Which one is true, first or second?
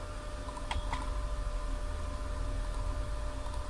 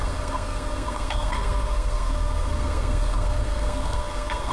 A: first